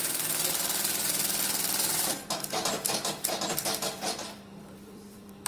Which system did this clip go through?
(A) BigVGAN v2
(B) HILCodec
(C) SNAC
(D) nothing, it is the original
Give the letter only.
A